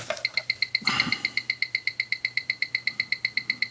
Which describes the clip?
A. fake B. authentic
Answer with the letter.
B